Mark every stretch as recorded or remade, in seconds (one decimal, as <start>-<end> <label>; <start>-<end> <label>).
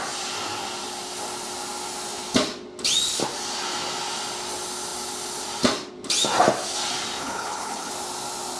0.0-7.2 recorded; 7.2-7.9 remade; 7.9-8.6 recorded